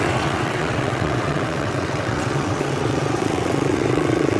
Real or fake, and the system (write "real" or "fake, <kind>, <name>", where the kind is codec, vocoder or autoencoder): fake, vocoder, WaveNeXt